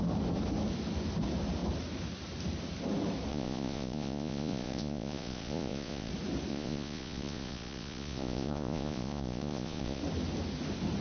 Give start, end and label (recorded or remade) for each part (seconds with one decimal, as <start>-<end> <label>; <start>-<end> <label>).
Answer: 0.0-3.3 recorded; 3.3-6.1 remade; 6.1-6.5 recorded; 6.5-10.0 remade; 10.0-11.0 recorded